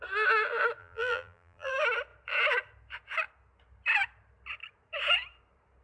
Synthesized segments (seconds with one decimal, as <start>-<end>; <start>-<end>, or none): 0.8-1.7